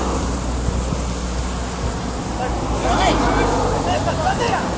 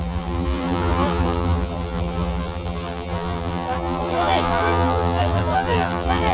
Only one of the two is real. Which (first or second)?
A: first